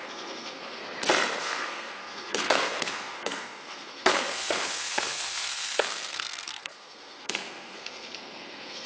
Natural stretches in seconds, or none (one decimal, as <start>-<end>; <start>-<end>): 0.8-1.4